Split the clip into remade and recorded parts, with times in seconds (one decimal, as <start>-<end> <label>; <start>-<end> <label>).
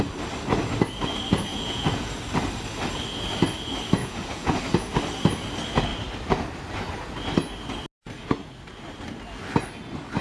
0.0-1.5 recorded; 1.5-2.2 remade; 2.2-4.0 recorded; 4.0-4.6 remade; 4.6-10.2 recorded